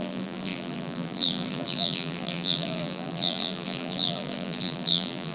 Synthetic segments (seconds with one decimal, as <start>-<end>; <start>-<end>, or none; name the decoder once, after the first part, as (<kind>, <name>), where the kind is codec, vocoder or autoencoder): 0.0-5.3 (vocoder, BigVGAN v2)